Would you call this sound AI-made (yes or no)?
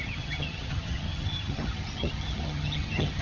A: yes